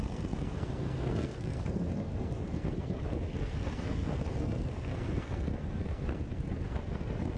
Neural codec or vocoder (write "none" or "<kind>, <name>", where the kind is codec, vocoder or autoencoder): codec, SNAC